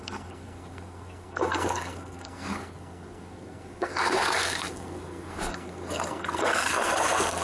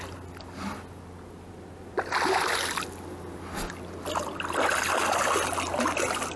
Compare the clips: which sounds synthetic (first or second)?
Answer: first